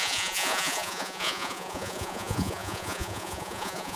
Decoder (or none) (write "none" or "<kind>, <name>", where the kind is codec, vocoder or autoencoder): vocoder, Vocos